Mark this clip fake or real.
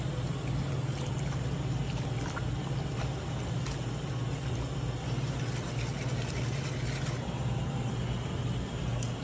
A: real